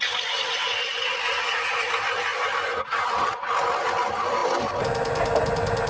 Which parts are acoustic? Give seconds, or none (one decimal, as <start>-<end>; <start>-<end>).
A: 0.0-5.9